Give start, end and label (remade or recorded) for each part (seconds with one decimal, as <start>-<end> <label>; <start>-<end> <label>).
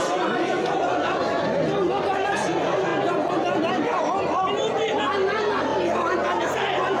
0.0-1.2 remade; 1.2-2.0 recorded; 2.0-2.9 remade; 2.9-4.5 recorded; 4.5-5.7 remade; 5.7-6.4 recorded; 6.4-7.0 remade